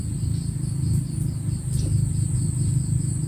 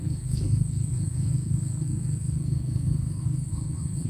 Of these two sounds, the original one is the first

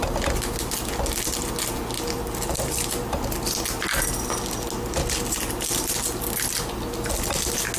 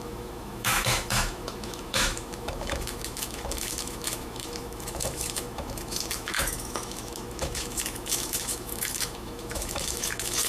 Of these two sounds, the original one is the first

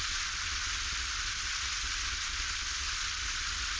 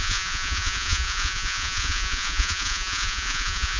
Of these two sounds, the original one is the first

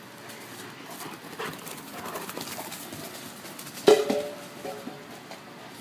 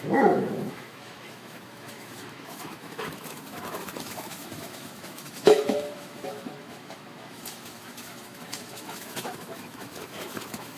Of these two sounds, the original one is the first